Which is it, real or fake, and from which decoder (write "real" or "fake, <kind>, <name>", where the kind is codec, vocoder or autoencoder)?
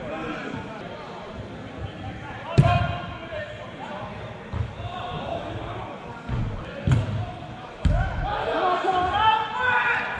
real